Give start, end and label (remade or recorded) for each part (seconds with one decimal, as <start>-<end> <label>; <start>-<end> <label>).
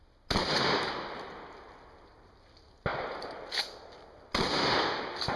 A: 0.0-5.4 recorded